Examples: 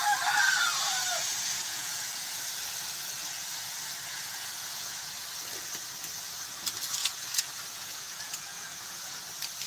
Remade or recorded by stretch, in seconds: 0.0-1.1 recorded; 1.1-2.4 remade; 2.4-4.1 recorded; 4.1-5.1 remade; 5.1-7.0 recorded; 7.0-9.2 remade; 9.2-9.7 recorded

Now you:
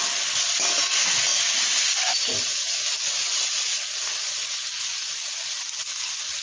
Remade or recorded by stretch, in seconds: 0.0-3.7 recorded; 3.7-5.6 remade; 5.6-6.4 recorded

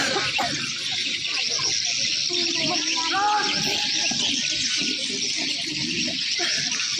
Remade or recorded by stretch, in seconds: 0.0-7.0 recorded

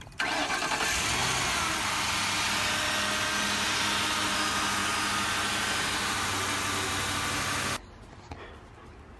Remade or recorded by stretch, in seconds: 0.0-9.2 recorded

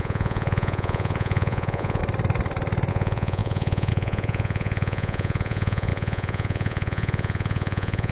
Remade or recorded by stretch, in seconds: 0.0-2.0 remade; 2.0-2.9 recorded; 2.9-8.1 remade

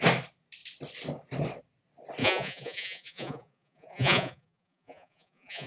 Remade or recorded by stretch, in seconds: 0.0-2.2 recorded; 2.2-5.7 remade

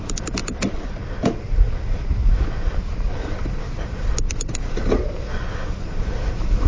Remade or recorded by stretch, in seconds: 0.0-6.7 recorded